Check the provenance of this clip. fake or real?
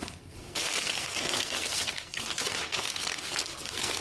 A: fake